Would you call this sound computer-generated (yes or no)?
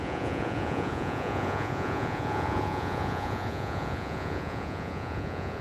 yes